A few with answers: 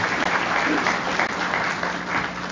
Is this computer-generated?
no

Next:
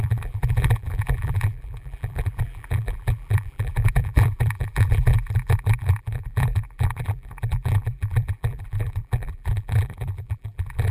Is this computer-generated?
yes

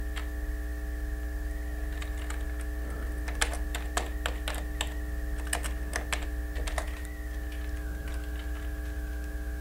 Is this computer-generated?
no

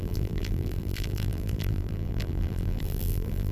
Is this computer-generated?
yes